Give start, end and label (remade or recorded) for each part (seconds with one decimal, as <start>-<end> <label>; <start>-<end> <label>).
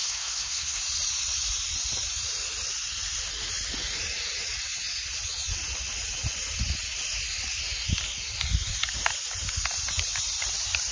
0.0-0.8 remade; 0.8-10.9 recorded